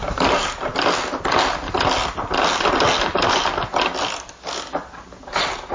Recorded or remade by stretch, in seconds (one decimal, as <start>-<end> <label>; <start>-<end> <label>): 0.0-0.7 remade; 0.7-3.0 recorded; 3.0-3.5 remade; 3.5-4.7 recorded; 4.7-5.7 remade